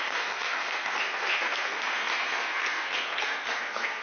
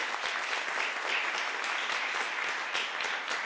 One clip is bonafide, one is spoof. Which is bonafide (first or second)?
second